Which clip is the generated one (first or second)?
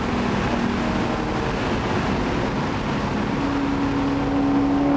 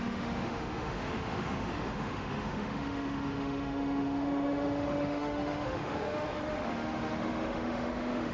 second